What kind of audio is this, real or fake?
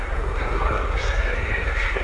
fake